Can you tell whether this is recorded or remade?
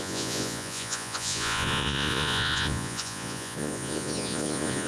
remade